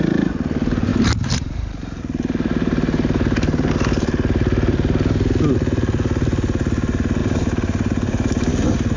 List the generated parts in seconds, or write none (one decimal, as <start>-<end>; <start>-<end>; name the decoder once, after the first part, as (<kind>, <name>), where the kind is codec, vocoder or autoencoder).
0.9-2.0 (vocoder, BigVGAN v2); 7.2-8.5